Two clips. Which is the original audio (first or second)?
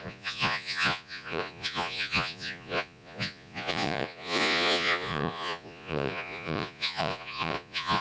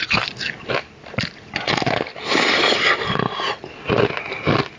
second